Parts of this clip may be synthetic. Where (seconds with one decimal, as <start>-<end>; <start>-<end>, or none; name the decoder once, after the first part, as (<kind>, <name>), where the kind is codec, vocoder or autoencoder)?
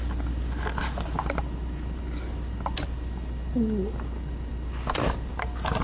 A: none